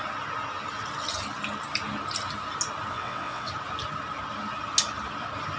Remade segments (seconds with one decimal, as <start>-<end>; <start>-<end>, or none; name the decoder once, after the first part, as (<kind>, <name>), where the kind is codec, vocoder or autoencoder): 2.9-3.5 (vocoder, WaveNeXt)